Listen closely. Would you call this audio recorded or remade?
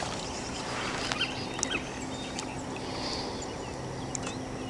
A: recorded